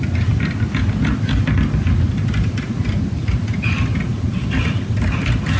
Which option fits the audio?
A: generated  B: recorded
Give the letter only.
B